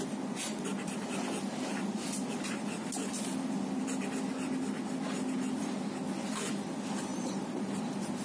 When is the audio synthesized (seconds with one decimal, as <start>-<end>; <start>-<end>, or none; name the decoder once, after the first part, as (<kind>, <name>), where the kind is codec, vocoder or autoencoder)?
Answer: 7.1-7.7 (vocoder, BigVGAN v2)